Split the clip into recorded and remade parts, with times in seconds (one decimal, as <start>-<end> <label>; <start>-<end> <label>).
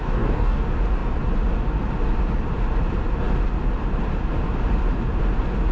0.0-0.6 remade; 0.6-5.7 recorded